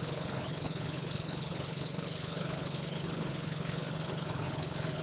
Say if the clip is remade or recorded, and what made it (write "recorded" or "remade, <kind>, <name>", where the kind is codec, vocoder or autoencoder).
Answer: remade, codec, HILCodec